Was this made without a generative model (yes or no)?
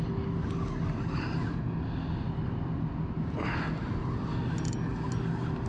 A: yes